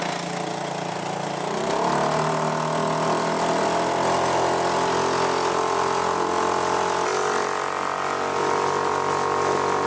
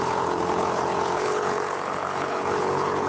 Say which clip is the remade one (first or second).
second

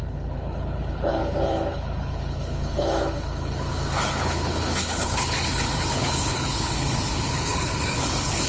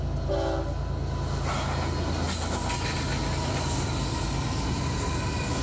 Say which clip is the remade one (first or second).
first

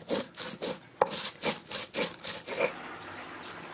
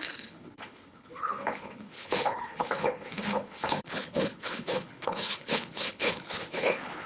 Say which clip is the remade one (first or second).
second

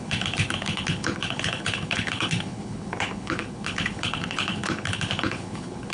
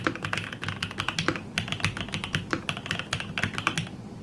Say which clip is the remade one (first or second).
first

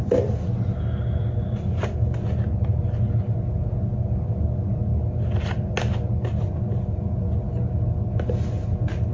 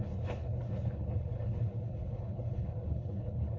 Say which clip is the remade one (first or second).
second